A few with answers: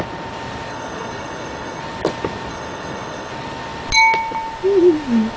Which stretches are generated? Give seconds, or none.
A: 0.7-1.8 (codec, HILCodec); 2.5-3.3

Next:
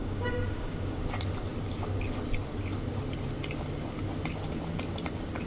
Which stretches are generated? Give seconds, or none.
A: 0.0-1.0 (codec, DAC)

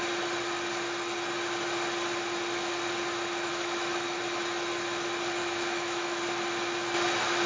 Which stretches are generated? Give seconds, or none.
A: 3.5-4.2 (autoencoder, DAC-VAE); 5.4-6.2